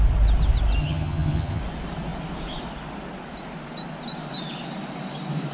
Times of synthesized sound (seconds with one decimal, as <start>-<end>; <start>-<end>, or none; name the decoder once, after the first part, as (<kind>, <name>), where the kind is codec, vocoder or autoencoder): 0.8-1.6 (vocoder, HiFi-GAN)